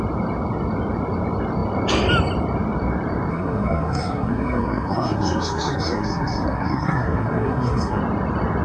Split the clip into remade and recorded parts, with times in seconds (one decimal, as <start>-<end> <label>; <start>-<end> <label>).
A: 0.0-3.3 recorded; 3.3-8.0 remade; 8.0-8.6 recorded